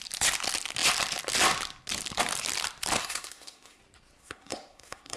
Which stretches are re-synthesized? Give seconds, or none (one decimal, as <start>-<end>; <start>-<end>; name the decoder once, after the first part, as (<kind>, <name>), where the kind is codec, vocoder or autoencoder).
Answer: 3.0-3.8 (codec, SNAC); 4.2-5.2